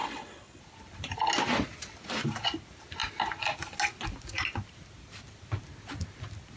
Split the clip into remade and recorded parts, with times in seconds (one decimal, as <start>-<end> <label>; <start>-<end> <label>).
0.0-0.6 remade; 0.6-6.6 recorded